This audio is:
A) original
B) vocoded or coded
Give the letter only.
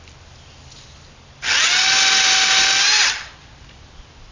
A